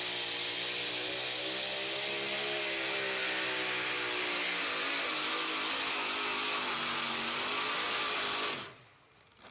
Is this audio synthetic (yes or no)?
no